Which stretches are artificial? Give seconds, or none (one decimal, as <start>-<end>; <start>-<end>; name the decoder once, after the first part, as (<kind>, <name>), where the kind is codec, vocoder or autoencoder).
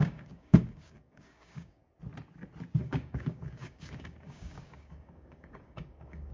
0.0-1.8 (codec, DAC); 2.8-6.3